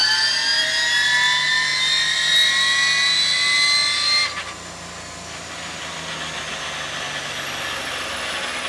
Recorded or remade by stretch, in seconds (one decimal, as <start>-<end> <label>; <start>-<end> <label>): 0.0-8.7 recorded